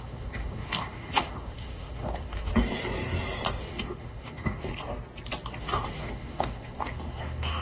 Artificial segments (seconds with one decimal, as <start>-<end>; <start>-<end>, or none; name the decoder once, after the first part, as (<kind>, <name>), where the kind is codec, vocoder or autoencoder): 0.0-2.5 (autoencoder, DAC-VAE); 3.6-4.7; 5.6-7.6